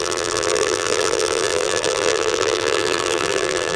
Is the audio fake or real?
fake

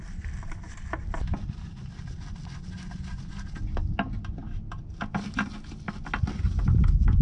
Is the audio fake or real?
real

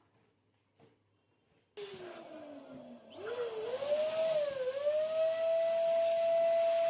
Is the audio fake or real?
real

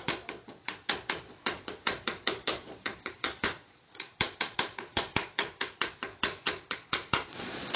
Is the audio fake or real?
fake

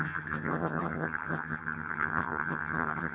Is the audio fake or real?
fake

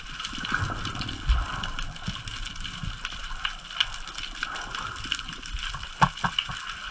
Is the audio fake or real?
real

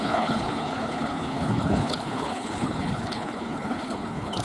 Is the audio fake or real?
fake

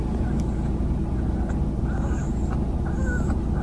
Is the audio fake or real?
real